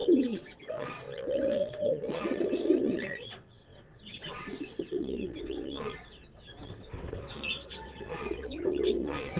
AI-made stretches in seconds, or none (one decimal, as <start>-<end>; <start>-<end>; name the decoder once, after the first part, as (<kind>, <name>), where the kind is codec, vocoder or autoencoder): 0.0-9.4 (vocoder, WaveNeXt)